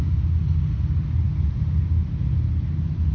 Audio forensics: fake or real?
real